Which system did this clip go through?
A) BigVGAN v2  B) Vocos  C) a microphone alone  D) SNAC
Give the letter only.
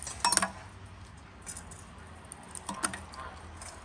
C